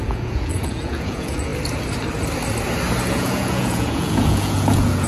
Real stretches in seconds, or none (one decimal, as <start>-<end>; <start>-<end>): 1.5-3.1